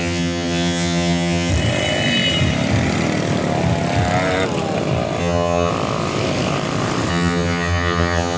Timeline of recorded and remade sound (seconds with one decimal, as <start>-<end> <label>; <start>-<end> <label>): 0.0-1.5 remade; 1.5-5.2 recorded; 5.2-5.7 remade; 5.7-7.1 recorded; 7.1-8.4 remade